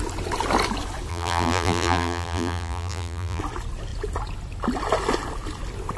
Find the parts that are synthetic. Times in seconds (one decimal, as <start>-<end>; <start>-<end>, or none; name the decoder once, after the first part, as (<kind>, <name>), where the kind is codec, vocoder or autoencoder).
1.1-3.4 (vocoder, BigVGAN v2)